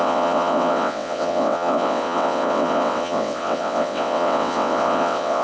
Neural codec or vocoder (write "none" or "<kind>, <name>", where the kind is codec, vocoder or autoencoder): vocoder, WaveNeXt